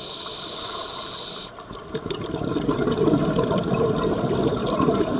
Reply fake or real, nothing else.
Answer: real